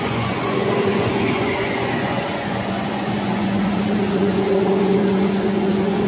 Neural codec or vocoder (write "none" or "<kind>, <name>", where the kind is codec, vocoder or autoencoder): vocoder, Vocos